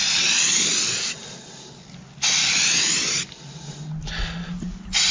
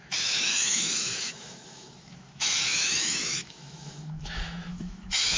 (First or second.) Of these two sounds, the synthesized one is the second